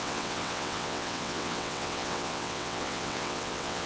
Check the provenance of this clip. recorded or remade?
remade